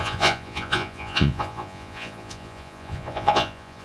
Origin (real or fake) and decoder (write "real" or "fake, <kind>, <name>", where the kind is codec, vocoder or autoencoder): fake, vocoder, Vocos